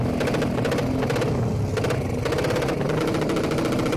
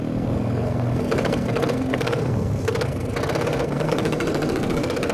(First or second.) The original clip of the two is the first